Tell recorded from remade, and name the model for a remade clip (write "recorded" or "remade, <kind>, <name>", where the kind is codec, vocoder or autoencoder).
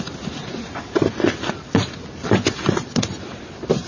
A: recorded